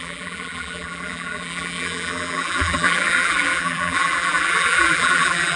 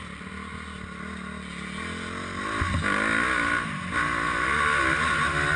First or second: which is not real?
first